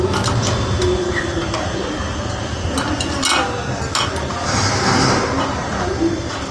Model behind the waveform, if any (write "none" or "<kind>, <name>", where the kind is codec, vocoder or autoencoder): none